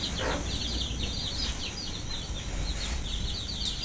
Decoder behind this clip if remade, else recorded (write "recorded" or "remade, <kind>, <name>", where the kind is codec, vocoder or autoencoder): recorded